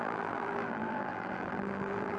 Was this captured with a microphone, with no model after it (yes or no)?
no